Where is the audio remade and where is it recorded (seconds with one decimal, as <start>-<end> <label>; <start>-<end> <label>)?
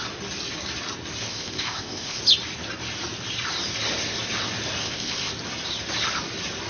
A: 0.0-1.3 recorded; 1.3-2.2 remade; 2.2-4.8 recorded; 4.8-5.3 remade; 5.3-6.7 recorded